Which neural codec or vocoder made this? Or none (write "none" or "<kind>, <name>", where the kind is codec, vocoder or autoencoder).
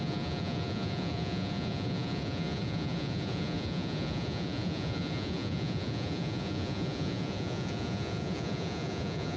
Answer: vocoder, Vocos